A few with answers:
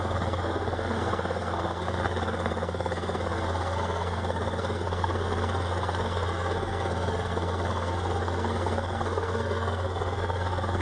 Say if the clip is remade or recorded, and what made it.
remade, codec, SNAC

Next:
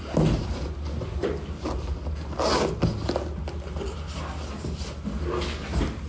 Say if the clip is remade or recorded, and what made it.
recorded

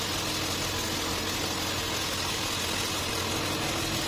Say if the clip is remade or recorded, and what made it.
recorded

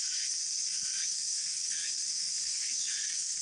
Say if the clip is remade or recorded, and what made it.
remade, codec, SNAC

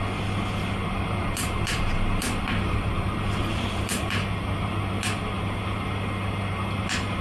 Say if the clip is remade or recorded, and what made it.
recorded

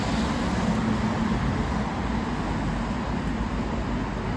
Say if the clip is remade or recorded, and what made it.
recorded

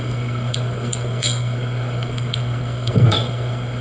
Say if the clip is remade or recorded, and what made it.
remade, codec, SNAC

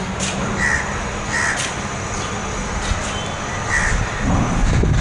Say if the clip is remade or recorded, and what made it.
recorded